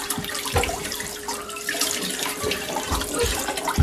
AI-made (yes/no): yes